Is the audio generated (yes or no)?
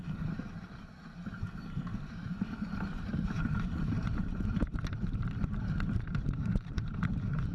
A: yes